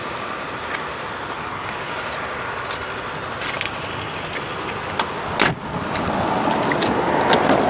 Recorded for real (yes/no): yes